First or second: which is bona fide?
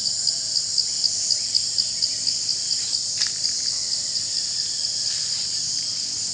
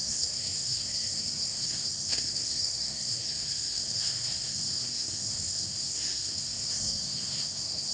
first